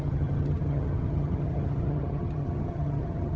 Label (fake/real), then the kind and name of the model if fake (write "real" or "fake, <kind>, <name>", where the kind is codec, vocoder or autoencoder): fake, vocoder, HiFi-GAN